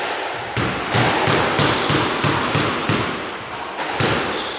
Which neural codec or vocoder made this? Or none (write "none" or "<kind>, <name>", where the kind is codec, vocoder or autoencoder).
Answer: none